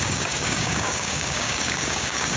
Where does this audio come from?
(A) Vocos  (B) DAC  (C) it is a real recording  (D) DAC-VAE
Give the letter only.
B